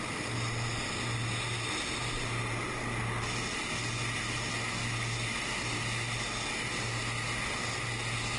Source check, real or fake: real